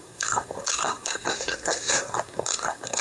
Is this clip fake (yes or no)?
yes